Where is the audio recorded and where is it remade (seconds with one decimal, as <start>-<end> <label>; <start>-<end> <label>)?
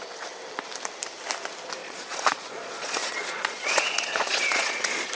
0.0-1.8 recorded; 1.8-5.1 remade